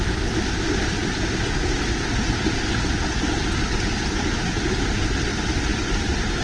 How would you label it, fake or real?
real